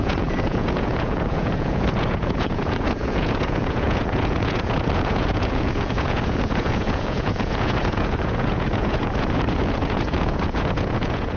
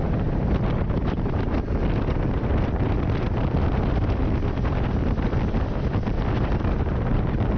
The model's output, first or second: first